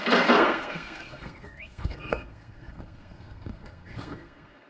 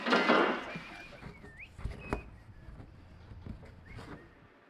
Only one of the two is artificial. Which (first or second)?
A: first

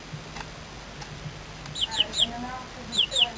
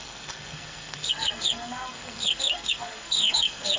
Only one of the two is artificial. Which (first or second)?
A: second